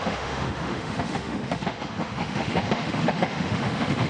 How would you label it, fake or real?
fake